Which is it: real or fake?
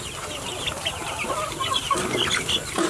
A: real